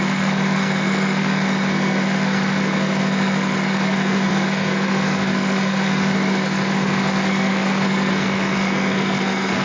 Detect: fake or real fake